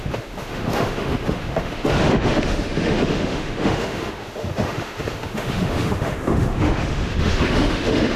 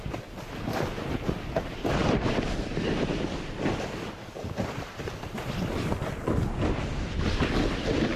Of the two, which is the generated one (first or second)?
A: first